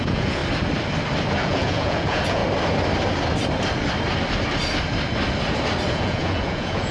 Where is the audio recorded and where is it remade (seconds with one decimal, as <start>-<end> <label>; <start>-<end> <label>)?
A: 0.0-0.4 remade; 0.4-1.4 recorded; 1.4-2.4 remade; 2.4-5.9 recorded; 5.9-6.9 remade

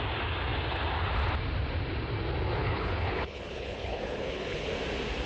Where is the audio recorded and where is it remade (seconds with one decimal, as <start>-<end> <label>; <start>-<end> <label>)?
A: 0.0-2.6 recorded; 2.6-4.7 remade; 4.7-5.3 recorded

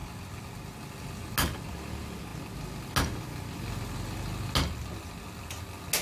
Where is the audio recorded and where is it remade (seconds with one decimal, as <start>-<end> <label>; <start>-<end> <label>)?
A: 0.0-6.0 recorded

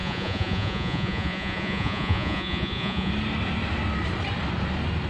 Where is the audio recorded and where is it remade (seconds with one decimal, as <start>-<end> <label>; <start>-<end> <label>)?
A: 0.0-3.1 remade; 3.1-5.1 recorded

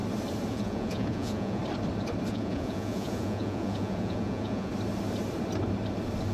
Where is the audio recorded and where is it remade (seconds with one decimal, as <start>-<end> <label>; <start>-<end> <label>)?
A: 0.0-0.5 recorded; 0.5-1.6 remade; 1.6-2.3 recorded; 2.3-4.7 remade; 4.7-6.3 recorded

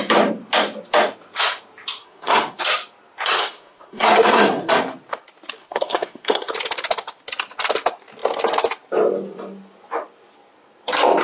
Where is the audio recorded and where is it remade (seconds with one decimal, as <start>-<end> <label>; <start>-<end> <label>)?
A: 0.0-2.0 recorded; 2.0-2.6 remade; 2.6-3.4 recorded; 3.4-4.7 remade; 4.7-5.6 recorded; 5.6-6.5 remade; 6.5-11.2 recorded

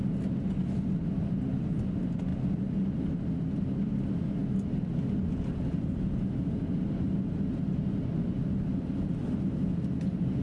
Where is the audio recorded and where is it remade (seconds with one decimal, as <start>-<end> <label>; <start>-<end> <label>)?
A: 0.0-10.4 recorded